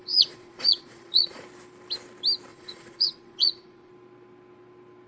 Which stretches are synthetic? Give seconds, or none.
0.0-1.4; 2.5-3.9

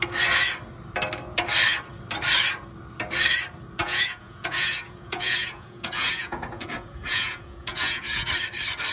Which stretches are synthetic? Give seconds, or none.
3.8-8.3